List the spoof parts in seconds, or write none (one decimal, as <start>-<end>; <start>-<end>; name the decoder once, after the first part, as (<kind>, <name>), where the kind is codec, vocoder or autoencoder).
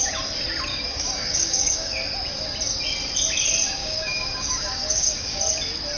0.7-2.0 (codec, DAC); 3.8-5.4